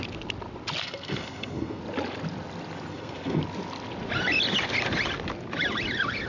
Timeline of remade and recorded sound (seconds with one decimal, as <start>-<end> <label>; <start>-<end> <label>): 0.0-0.8 recorded; 0.8-1.8 remade; 1.8-2.9 recorded; 2.9-3.4 remade; 3.4-6.3 recorded